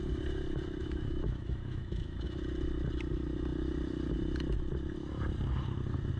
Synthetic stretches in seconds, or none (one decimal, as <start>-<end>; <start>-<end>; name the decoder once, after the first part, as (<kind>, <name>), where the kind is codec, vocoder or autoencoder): 0.8-2.4 (autoencoder, DAC-VAE)